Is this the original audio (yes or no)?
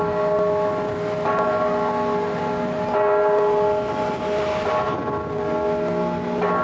yes